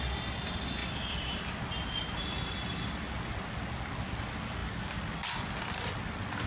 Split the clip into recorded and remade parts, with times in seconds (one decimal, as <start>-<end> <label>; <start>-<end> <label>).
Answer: 0.0-6.5 recorded